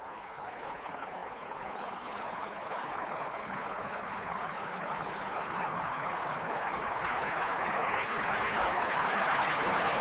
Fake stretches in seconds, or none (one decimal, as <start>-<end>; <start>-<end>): 0.0-10.0